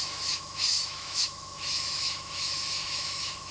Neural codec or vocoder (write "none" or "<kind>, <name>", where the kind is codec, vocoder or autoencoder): autoencoder, DAC-VAE